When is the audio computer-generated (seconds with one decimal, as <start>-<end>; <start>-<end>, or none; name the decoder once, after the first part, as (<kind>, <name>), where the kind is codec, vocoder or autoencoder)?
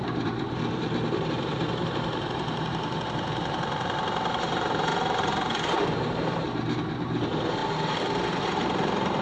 0.0-4.9 (vocoder, BigVGAN v2); 5.7-7.6; 8.4-9.2